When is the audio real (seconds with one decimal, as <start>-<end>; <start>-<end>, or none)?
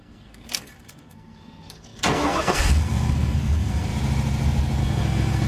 3.9-4.8